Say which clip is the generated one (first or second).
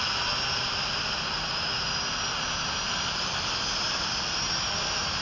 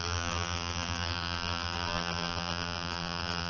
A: second